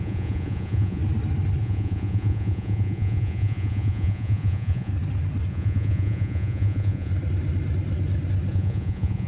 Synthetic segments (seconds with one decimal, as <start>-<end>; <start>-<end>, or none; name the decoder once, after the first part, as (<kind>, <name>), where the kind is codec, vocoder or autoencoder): 0.0-1.0 (vocoder, Vocos); 1.6-4.9; 5.5-7.1; 8.5-9.3